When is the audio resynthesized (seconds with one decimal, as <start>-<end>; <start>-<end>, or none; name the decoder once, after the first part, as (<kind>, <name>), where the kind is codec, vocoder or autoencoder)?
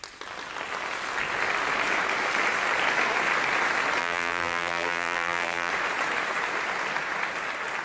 4.0-5.7 (vocoder, BigVGAN v2)